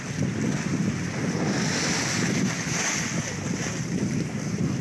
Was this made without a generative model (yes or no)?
yes